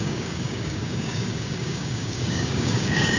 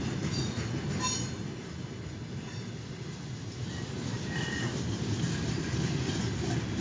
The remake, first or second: first